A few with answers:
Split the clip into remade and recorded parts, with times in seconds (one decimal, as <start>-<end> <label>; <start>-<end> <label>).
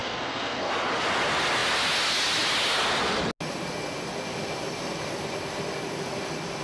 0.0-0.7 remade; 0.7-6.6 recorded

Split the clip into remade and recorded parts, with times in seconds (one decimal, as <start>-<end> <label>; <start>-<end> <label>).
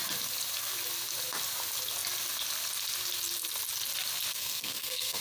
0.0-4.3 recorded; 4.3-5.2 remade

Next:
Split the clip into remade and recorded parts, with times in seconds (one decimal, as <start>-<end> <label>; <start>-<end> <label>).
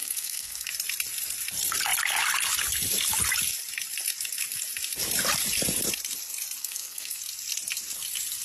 0.0-0.7 remade; 0.7-6.6 recorded; 6.6-7.2 remade; 7.2-8.4 recorded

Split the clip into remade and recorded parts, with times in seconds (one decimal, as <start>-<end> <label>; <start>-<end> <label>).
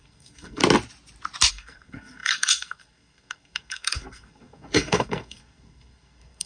0.0-0.6 remade; 0.6-1.5 recorded; 1.5-6.5 remade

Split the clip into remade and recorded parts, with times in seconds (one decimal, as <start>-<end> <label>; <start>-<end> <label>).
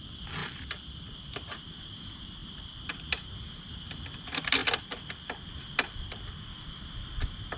0.0-7.6 recorded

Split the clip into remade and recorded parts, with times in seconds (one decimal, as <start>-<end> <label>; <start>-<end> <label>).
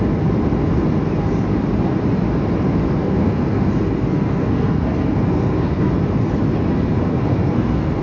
0.0-3.0 recorded; 3.0-5.9 remade; 5.9-7.1 recorded; 7.1-8.0 remade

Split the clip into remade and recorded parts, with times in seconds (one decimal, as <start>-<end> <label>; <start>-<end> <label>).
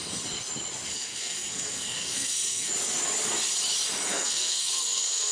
0.0-0.9 recorded; 0.9-2.7 remade; 2.7-4.1 recorded; 4.1-5.3 remade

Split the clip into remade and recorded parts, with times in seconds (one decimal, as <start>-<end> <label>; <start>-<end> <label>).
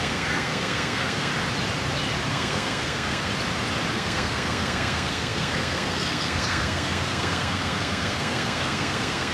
0.0-1.3 remade; 1.3-2.3 recorded; 2.3-3.3 remade; 3.3-3.9 recorded; 3.9-9.3 remade